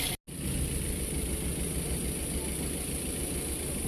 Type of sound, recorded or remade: recorded